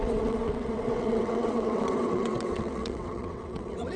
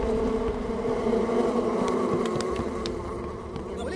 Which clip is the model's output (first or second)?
first